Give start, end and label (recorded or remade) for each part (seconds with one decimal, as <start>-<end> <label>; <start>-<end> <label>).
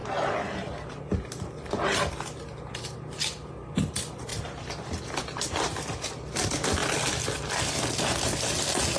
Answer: 0.0-1.7 remade; 1.7-9.0 recorded